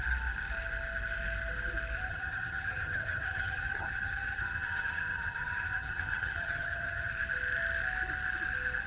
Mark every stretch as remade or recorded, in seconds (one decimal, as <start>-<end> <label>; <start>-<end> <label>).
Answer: 0.0-2.1 recorded; 2.1-7.1 remade; 7.1-8.9 recorded